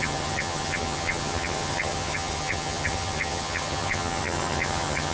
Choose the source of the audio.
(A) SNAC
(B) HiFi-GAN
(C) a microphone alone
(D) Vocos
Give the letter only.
B